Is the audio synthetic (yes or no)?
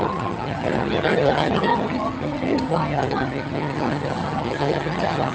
yes